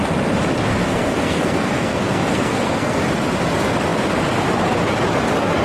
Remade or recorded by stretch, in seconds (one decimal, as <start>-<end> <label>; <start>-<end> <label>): 0.0-0.7 recorded; 0.7-3.0 remade; 3.0-5.6 recorded